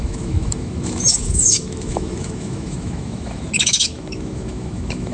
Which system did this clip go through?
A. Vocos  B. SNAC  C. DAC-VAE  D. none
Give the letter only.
C